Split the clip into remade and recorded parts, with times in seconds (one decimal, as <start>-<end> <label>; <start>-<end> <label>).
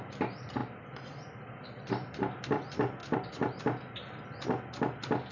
0.0-0.6 recorded; 0.6-1.9 remade; 1.9-3.0 recorded; 3.0-3.6 remade; 3.6-5.3 recorded